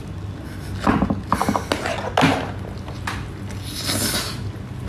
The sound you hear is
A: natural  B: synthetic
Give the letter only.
A